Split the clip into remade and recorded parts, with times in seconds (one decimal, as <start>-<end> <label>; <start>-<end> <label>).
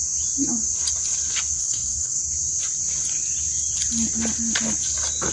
0.0-1.6 recorded; 1.6-2.2 remade; 2.2-5.3 recorded